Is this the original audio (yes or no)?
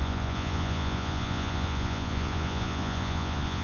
no